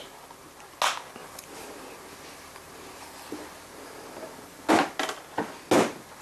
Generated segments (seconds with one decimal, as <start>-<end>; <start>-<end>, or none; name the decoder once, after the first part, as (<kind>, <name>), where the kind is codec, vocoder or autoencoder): none